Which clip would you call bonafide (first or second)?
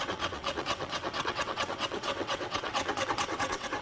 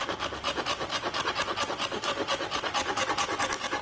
second